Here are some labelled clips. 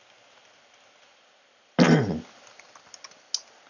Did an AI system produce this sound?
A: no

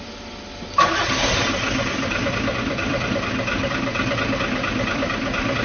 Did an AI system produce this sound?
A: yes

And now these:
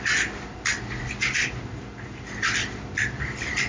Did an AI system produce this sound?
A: no